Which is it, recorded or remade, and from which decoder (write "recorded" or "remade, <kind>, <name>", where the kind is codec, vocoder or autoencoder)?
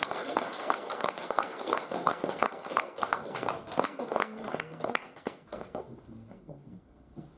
remade, codec, SNAC